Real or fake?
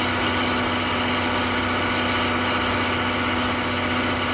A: real